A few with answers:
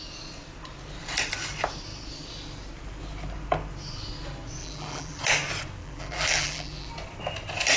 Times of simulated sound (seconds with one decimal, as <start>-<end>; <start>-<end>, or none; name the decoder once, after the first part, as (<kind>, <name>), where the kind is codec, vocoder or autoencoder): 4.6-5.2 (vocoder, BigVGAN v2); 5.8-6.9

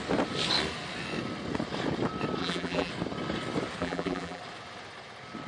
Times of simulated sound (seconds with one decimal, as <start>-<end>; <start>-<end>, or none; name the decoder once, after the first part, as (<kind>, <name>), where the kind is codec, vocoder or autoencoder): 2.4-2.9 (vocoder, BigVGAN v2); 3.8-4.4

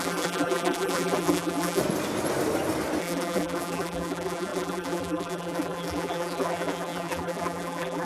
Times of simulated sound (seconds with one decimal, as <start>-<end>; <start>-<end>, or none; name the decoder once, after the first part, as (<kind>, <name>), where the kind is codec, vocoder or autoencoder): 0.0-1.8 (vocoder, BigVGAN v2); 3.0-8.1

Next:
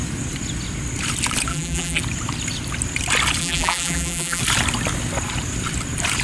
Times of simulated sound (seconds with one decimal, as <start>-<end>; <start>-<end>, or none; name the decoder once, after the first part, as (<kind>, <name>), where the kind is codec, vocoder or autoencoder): 1.5-2.0 (vocoder, BigVGAN v2); 3.4-4.4

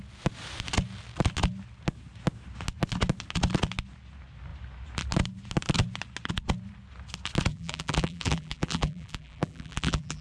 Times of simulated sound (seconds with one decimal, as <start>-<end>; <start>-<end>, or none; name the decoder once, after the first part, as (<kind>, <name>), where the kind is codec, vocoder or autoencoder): 7.5-10.2 (vocoder, BigVGAN v2)

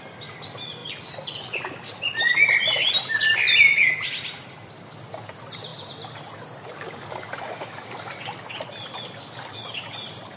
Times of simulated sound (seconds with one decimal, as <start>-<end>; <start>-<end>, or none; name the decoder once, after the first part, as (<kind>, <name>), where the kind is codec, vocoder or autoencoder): 0.0-5.7 (vocoder, BigVGAN v2); 9.0-10.4